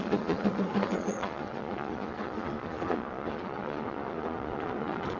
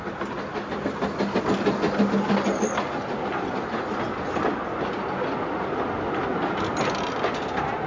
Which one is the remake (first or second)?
first